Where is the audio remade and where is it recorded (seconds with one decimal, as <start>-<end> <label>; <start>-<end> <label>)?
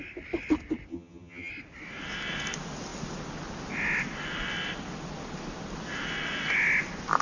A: 0.0-0.9 recorded; 0.9-1.5 remade; 1.5-7.2 recorded